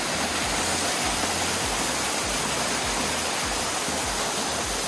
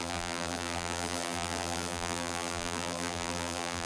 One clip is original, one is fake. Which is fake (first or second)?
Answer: second